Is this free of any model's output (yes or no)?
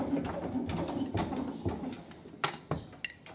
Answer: yes